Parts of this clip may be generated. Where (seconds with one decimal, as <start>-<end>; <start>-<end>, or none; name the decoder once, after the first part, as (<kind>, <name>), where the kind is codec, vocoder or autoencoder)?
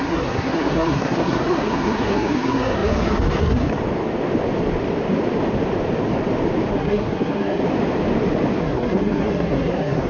0.0-3.8 (codec, SNAC); 6.7-7.6; 8.6-10.1